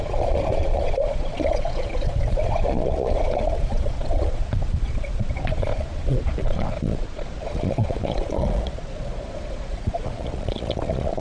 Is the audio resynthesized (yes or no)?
yes